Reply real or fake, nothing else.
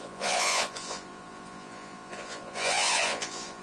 fake